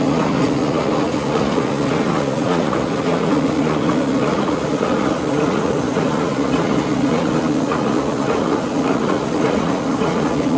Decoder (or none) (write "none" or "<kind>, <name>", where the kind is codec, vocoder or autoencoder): vocoder, Vocos